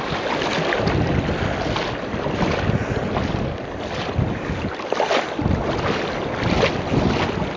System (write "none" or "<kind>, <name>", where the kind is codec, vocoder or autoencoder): none